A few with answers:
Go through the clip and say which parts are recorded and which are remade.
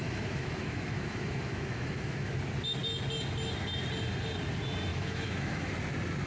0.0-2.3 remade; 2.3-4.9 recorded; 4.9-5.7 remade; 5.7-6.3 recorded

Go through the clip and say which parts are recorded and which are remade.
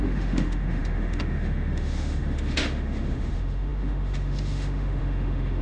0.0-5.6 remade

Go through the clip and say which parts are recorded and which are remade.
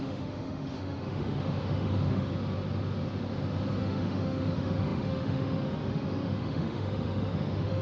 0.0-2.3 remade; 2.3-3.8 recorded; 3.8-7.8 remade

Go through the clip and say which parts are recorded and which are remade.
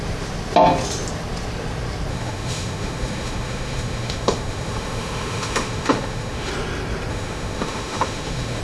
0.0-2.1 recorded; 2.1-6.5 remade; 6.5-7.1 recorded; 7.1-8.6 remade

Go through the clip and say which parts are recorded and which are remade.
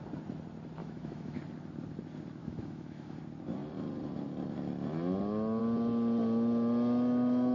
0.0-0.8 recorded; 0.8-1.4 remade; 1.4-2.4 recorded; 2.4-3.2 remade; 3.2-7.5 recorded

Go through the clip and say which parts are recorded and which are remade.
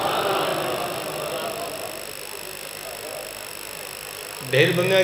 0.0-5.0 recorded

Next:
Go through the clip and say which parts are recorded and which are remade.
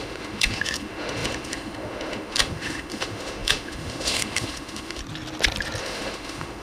0.0-5.0 remade; 5.0-5.8 recorded; 5.8-6.6 remade